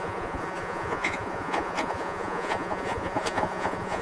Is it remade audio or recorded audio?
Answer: remade